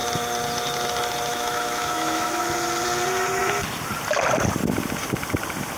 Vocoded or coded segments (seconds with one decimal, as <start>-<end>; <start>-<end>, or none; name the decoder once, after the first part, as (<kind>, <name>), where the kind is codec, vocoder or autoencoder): 1.3-2.4 (autoencoder, DAC-VAE)